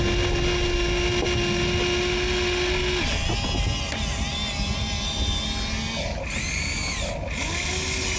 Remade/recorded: recorded